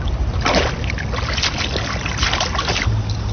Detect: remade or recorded recorded